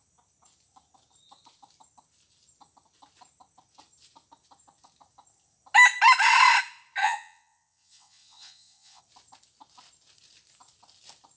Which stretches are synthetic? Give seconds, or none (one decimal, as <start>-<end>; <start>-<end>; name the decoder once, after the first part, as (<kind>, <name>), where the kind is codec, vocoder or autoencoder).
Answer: 7.0-9.0 (vocoder, WaveNeXt)